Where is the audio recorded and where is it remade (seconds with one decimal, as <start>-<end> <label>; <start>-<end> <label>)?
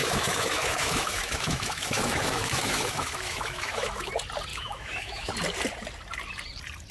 0.0-4.1 remade; 4.1-4.5 recorded; 4.5-5.3 remade; 5.3-6.9 recorded